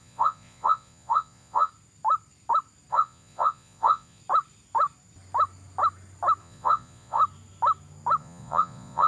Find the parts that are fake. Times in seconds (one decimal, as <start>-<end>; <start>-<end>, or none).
0.0-1.7; 2.9-4.2; 6.4-7.2; 8.2-9.1